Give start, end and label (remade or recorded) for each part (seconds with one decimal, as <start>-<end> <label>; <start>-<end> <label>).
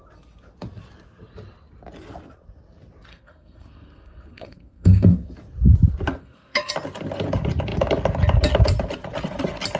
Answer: 0.0-3.1 recorded; 3.1-5.1 remade; 5.1-6.2 recorded; 6.2-6.7 remade; 6.7-9.8 recorded